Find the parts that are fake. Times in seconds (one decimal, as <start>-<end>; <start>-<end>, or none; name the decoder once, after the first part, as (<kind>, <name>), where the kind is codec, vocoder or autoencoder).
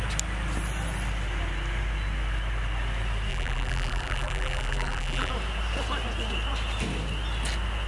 3.3-5.3 (vocoder, BigVGAN v2)